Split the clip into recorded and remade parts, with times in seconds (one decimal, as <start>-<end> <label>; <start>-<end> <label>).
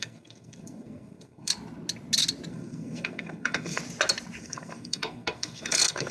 0.0-1.5 remade; 1.5-2.5 recorded; 2.5-3.8 remade; 3.8-4.4 recorded; 4.4-6.1 remade